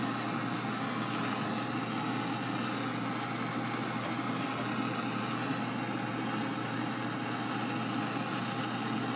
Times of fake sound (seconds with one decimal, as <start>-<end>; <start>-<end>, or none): none